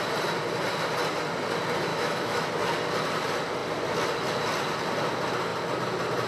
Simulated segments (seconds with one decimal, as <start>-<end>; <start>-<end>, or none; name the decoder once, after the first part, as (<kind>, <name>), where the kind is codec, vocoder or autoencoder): 1.9-2.5 (autoencoder, DAC-VAE)